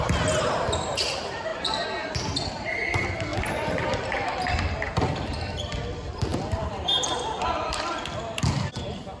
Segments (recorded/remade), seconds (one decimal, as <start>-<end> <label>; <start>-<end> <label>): 0.0-1.5 remade; 1.5-2.5 recorded; 2.5-3.3 remade; 3.3-4.5 recorded; 4.5-9.2 remade